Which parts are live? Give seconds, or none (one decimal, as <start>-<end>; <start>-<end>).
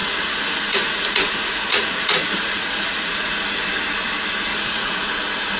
3.4-4.5; 5.1-5.6